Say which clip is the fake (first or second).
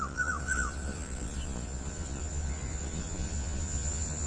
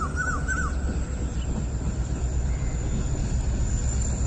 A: first